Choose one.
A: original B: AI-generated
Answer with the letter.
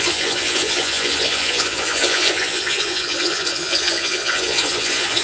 B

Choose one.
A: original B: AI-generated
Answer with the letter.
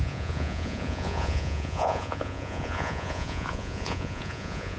B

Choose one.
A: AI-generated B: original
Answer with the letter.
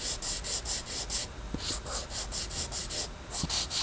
B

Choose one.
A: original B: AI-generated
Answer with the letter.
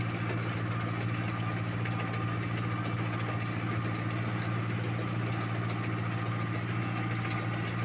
A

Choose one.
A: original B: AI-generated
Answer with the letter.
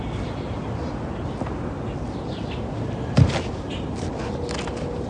A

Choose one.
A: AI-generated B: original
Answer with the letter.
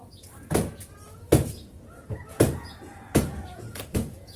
A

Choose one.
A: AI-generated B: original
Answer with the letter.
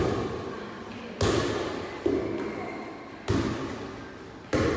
B